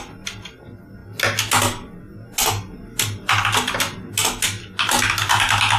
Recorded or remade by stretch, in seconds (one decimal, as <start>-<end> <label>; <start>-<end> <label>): 0.0-5.8 recorded